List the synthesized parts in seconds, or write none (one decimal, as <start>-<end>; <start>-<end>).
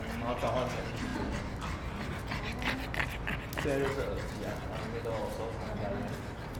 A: none